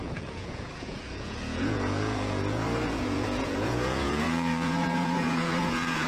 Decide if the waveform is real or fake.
fake